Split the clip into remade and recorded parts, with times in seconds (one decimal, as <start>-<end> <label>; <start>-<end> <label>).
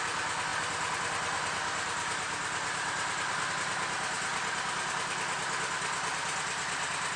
0.0-0.5 recorded; 0.5-3.5 remade; 3.5-7.2 recorded